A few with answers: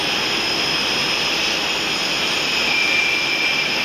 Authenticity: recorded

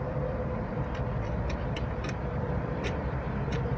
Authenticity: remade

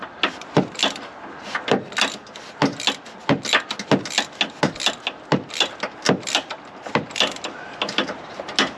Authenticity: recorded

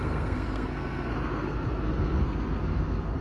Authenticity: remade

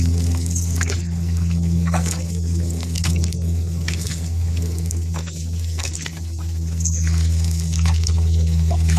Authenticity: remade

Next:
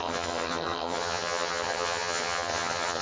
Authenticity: remade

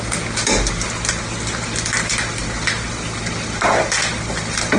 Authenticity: recorded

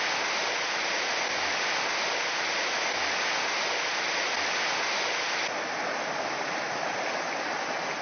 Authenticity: recorded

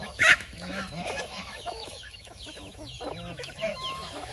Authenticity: remade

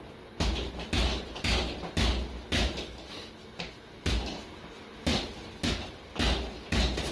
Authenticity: recorded